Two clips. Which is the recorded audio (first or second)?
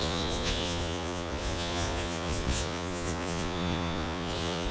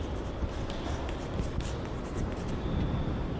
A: second